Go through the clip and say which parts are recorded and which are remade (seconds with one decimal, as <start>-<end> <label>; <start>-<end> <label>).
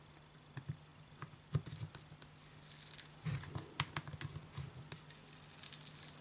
0.0-6.2 recorded